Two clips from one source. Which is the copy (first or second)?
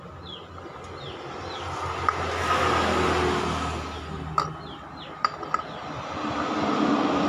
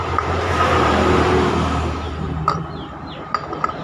second